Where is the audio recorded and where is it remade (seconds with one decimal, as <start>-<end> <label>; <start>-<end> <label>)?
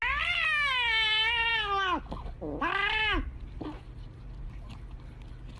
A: 0.0-5.6 recorded